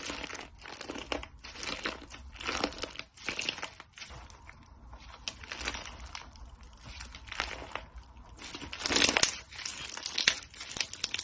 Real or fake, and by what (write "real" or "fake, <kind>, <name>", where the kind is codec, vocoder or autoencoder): real